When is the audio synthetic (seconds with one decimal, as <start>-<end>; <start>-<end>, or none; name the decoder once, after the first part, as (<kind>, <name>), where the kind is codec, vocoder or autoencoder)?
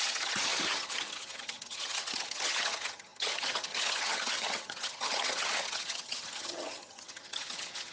0.0-7.9 (vocoder, HiFi-GAN)